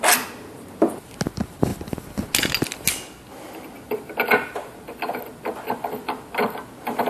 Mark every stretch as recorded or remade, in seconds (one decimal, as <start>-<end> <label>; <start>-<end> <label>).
0.0-7.1 recorded

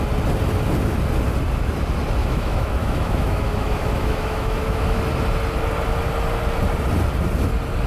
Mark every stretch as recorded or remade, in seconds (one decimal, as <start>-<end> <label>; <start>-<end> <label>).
0.0-2.2 recorded; 2.2-5.0 remade; 5.0-7.9 recorded

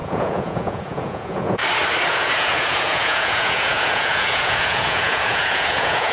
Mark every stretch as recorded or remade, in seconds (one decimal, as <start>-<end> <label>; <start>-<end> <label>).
0.0-1.6 remade; 1.6-2.1 recorded; 2.1-6.1 remade

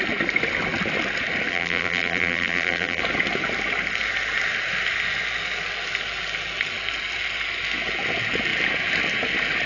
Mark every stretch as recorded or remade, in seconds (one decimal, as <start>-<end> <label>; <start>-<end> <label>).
0.0-1.5 recorded; 1.5-3.0 remade; 3.0-9.7 recorded